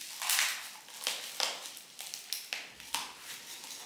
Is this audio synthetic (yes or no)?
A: no